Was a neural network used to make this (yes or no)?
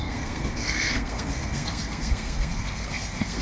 yes